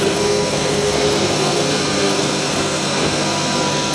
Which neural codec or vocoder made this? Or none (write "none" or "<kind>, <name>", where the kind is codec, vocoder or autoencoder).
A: codec, SNAC